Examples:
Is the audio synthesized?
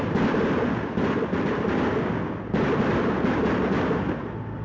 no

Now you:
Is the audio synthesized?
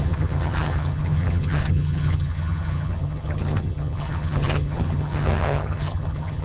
yes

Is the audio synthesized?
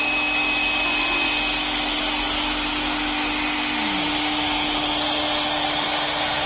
no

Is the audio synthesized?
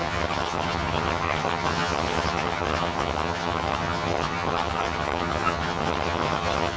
yes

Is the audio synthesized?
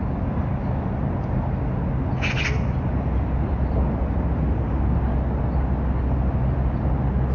no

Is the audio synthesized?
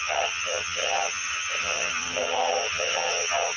yes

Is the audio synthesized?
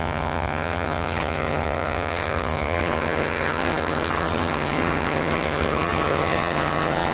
yes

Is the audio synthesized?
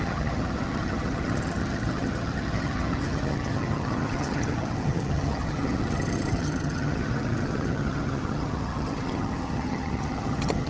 yes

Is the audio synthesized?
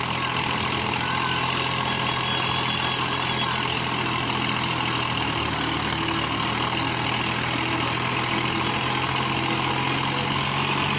no